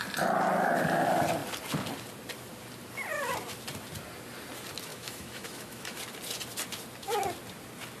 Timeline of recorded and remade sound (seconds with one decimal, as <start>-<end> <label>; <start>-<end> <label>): 0.0-4.9 recorded; 4.9-6.0 remade; 6.0-8.0 recorded

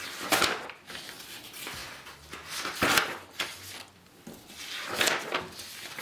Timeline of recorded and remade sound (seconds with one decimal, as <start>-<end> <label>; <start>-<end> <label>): 0.0-6.0 recorded

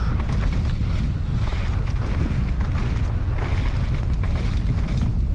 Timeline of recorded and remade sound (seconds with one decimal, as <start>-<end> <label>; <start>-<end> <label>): 0.0-5.3 recorded

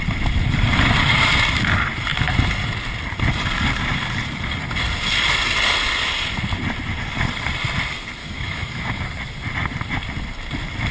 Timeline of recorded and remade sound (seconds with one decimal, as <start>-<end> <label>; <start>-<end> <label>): 0.0-8.2 recorded; 8.2-9.0 remade; 9.0-10.9 recorded

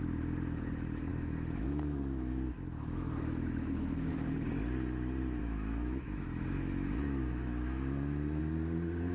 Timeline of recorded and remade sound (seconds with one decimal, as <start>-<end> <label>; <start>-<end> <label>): 0.0-1.1 recorded; 1.1-4.1 remade; 4.1-5.4 recorded; 5.4-8.4 remade; 8.4-9.1 recorded